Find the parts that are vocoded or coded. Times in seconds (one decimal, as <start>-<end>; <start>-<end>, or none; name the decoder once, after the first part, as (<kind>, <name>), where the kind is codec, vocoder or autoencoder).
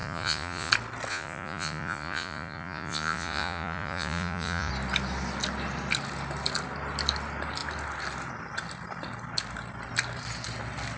0.0-0.7 (vocoder, Vocos); 1.1-4.7